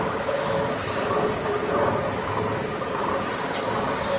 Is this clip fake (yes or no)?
no